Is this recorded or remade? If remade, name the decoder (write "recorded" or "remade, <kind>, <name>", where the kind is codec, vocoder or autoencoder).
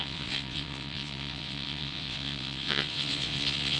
remade, vocoder, WaveNeXt